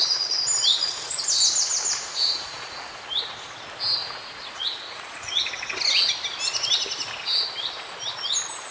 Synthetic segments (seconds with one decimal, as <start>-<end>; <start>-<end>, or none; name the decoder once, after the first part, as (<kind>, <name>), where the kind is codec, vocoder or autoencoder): 0.7-1.3 (vocoder, Vocos); 2.1-3.0; 4.0-5.5